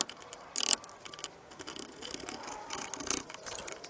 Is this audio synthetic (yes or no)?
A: no